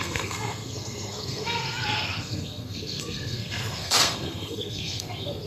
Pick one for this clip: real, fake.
fake